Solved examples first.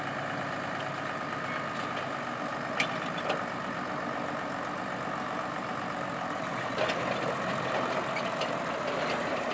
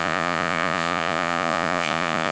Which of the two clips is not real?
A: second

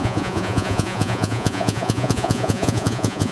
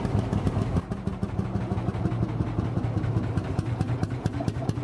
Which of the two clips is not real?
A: first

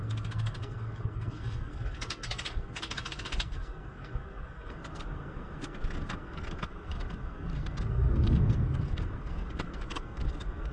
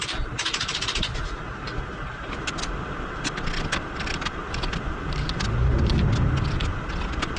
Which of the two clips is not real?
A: first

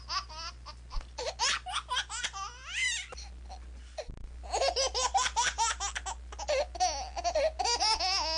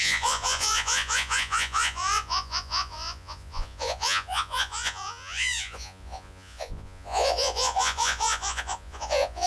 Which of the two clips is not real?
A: second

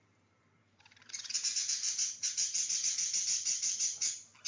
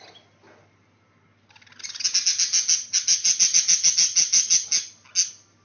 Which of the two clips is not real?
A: first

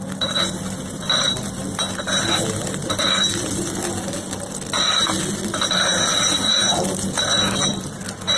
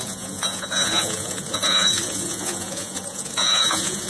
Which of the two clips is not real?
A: second